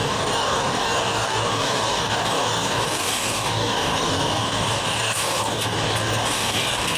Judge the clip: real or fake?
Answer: fake